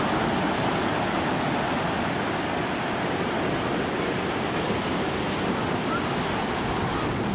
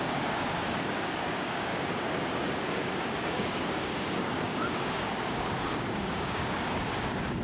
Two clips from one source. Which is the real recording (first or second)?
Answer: first